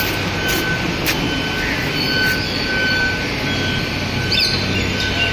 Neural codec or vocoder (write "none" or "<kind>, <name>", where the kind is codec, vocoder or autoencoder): none